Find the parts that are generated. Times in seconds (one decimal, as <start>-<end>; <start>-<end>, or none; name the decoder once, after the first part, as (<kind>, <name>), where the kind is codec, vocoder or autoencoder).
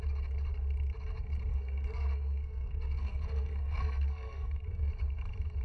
1.5-4.9 (codec, SNAC)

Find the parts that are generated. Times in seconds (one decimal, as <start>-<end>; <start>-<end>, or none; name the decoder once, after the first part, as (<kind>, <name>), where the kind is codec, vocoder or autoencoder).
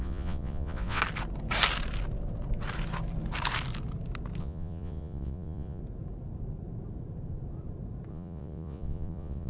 0.0-1.0 (vocoder, Vocos); 4.4-5.8; 8.1-9.5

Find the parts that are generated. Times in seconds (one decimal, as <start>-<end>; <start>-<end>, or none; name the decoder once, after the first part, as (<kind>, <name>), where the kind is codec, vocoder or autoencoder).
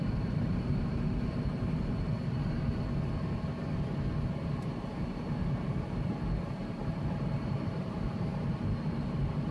0.0-2.7 (vocoder, BigVGAN v2); 6.4-8.3; 8.9-9.5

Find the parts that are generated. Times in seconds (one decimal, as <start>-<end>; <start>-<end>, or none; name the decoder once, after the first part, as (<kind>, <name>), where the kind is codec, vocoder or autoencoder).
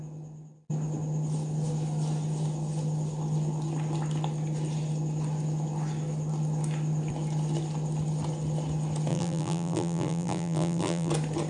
9.1-11.1 (vocoder, BigVGAN v2)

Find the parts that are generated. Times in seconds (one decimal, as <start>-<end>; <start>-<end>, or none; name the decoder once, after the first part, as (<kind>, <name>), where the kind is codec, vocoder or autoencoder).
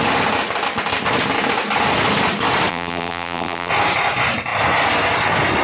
2.7-3.7 (vocoder, BigVGAN v2)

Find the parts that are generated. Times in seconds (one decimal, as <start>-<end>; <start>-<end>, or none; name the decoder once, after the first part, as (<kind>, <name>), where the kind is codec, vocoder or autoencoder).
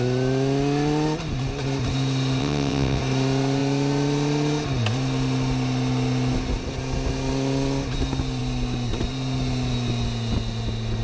2.4-3.0 (vocoder, WaveNeXt)